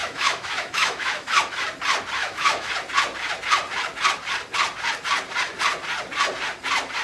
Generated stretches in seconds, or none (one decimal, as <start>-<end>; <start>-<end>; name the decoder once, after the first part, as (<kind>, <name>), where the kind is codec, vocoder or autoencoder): 0.0-1.4 (autoencoder, DAC-VAE); 2.2-2.7